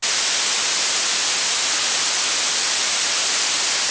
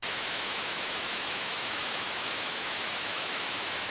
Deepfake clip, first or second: second